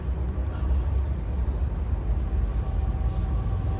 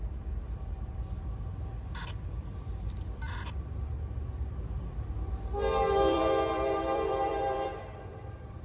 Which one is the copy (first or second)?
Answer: second